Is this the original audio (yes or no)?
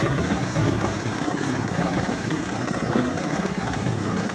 no